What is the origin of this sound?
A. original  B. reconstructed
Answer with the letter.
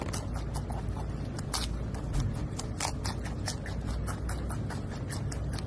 A